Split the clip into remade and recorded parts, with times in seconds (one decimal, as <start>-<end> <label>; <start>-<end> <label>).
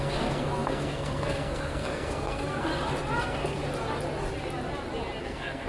0.0-2.7 remade; 2.7-3.2 recorded; 3.2-3.6 remade; 3.6-5.2 recorded; 5.2-5.7 remade